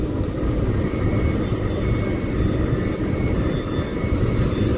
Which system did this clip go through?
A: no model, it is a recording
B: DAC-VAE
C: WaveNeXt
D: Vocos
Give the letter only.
A